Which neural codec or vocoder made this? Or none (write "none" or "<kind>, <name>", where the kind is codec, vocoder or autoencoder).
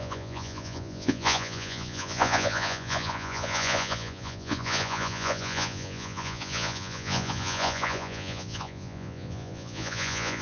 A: vocoder, Vocos